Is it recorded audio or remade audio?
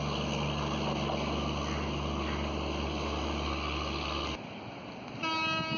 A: recorded